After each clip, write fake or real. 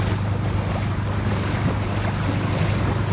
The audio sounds real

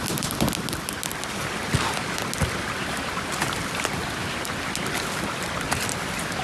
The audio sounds real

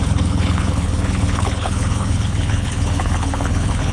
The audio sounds fake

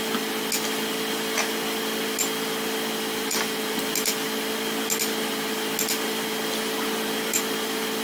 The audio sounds real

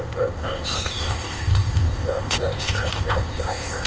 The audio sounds fake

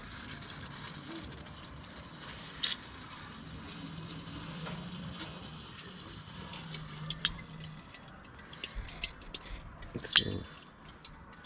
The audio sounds real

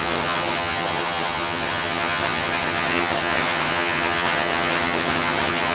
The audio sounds fake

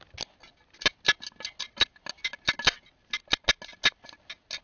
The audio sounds real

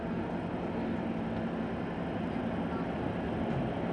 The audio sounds real